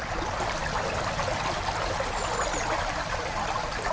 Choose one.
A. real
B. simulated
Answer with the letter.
A